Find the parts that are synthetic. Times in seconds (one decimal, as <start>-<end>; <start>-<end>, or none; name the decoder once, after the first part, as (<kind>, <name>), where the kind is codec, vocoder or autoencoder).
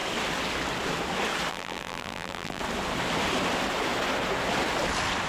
1.5-2.6 (vocoder, BigVGAN v2)